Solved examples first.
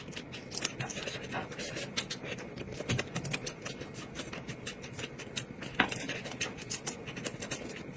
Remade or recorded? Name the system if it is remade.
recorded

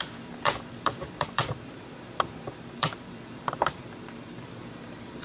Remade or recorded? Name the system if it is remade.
remade, vocoder, BigVGAN v2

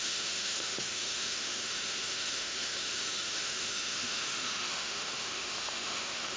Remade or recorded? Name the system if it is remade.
remade, autoencoder, DAC-VAE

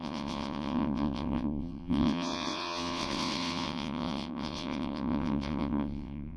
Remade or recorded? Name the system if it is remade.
remade, vocoder, WaveNeXt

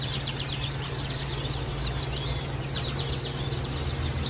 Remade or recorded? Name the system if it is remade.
recorded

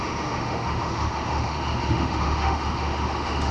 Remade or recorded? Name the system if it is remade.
remade, autoencoder, DAC-VAE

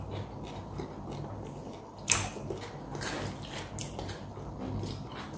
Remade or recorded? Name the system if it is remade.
recorded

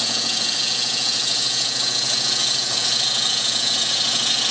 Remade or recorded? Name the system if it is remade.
remade, vocoder, Vocos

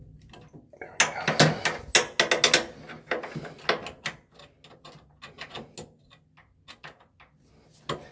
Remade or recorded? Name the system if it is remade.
recorded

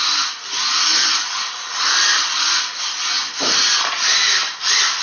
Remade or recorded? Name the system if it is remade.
recorded